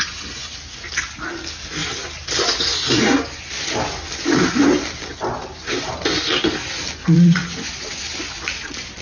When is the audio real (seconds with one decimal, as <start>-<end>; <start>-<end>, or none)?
0.0-9.0